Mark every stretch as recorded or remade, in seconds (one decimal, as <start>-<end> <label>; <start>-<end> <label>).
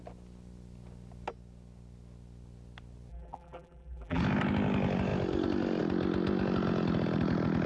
0.0-3.1 recorded; 3.1-4.2 remade; 4.2-7.7 recorded